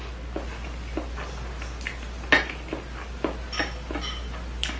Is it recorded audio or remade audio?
recorded